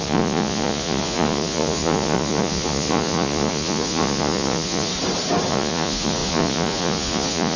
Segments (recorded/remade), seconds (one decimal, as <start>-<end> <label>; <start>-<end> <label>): 0.0-4.9 remade; 4.9-5.5 recorded; 5.5-7.6 remade